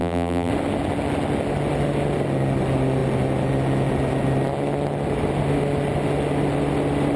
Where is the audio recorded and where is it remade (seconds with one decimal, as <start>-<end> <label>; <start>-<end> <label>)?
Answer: 0.0-0.5 remade; 0.5-7.2 recorded